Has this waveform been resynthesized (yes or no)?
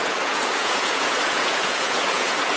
yes